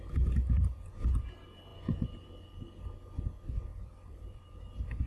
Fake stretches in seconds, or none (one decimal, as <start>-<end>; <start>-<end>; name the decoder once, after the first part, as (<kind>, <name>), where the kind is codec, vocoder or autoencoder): 3.7-4.6 (vocoder, BigVGAN v2)